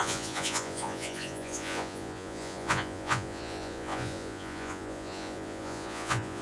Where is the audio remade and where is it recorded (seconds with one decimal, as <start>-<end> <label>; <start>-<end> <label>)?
0.0-6.4 remade